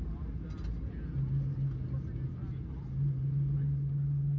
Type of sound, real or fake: real